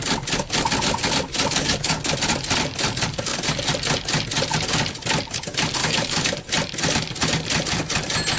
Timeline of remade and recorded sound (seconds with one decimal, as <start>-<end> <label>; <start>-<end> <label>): 0.0-1.3 recorded; 1.3-2.1 remade; 2.1-5.8 recorded; 5.8-6.3 remade; 6.3-8.4 recorded